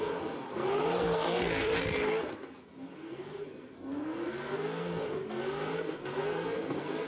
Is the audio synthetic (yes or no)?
yes